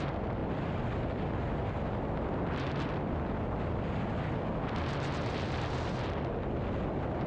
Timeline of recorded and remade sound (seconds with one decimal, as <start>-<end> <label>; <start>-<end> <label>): 0.0-7.3 recorded